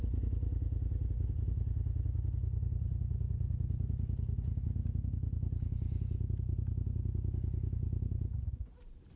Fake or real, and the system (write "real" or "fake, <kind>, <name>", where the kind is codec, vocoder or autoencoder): real